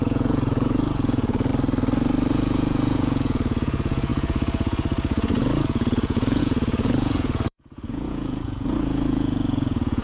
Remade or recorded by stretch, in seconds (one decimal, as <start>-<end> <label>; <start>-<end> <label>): 0.0-1.5 remade; 1.5-2.3 recorded; 2.3-10.0 remade